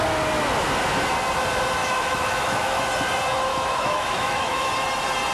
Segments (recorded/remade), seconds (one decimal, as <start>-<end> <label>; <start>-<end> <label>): 0.0-1.8 recorded; 1.8-2.8 remade; 2.8-3.5 recorded; 3.5-4.7 remade; 4.7-5.3 recorded